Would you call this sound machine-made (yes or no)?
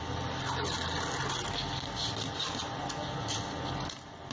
no